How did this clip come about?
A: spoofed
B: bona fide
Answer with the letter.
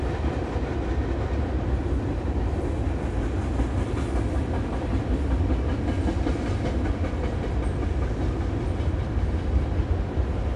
B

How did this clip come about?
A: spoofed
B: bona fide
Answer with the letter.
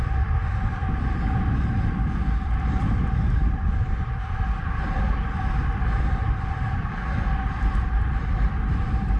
A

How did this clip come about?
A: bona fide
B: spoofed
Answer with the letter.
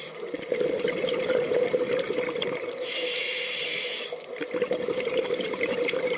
A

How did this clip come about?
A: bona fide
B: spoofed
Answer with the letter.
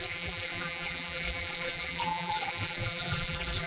B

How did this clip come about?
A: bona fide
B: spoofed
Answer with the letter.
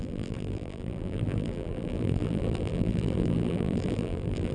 B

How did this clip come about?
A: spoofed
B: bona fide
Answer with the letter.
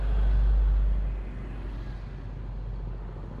B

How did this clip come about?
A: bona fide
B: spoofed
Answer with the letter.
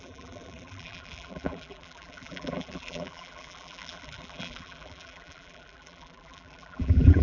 B